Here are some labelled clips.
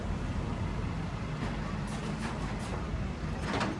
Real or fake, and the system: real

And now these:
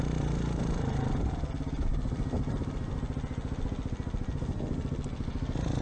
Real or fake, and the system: real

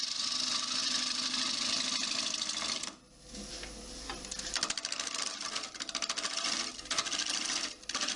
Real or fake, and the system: real